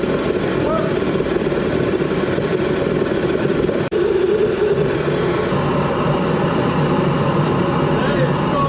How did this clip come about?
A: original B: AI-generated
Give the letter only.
B